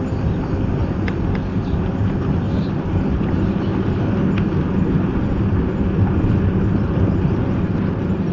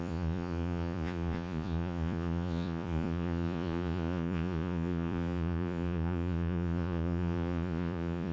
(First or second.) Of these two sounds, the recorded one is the first